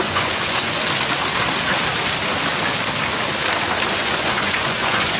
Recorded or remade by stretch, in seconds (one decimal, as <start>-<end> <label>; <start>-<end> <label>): 0.0-0.8 remade; 0.8-3.9 recorded; 3.9-5.2 remade